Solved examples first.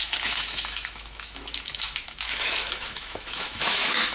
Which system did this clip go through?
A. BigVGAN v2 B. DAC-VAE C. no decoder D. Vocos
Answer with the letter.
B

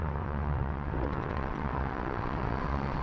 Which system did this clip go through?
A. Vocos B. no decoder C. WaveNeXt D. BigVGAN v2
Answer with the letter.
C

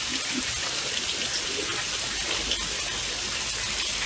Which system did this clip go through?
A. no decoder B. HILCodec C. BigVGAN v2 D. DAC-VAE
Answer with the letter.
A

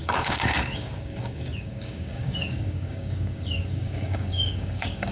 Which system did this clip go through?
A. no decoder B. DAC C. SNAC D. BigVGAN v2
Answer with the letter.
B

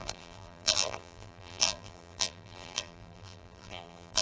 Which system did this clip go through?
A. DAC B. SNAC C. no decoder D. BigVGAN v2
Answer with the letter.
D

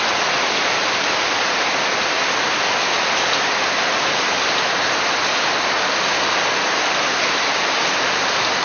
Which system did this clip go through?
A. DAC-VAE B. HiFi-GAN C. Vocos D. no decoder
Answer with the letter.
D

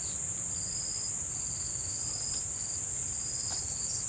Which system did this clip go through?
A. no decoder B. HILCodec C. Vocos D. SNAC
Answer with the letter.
A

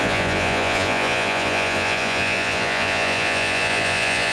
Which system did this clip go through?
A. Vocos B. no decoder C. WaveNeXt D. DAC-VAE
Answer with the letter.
A